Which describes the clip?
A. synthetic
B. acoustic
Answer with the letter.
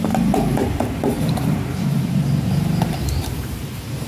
A